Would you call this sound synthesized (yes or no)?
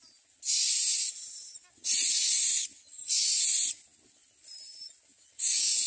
no